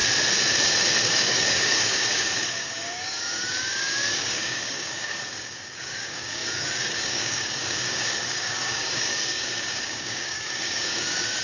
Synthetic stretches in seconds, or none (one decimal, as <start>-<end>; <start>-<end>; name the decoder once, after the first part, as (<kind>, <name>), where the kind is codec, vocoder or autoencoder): 1.0-11.4 (codec, DAC)